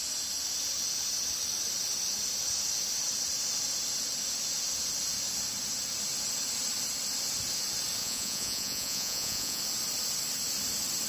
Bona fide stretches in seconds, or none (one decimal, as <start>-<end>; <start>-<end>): 0.0-8.0; 9.6-11.1